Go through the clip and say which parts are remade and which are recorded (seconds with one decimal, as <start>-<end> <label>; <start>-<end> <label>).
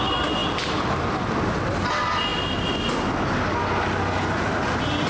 0.0-5.1 recorded